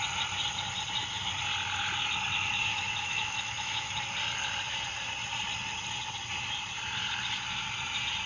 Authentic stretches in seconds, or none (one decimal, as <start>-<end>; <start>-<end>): 0.0-2.7; 4.0-8.3